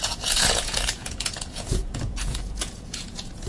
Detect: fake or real fake